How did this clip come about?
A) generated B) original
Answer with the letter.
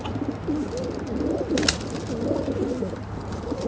B